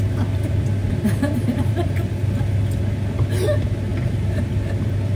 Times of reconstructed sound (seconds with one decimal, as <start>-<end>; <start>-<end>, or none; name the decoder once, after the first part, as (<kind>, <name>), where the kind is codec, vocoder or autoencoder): 0.8-2.1 (vocoder, BigVGAN v2); 3.9-4.4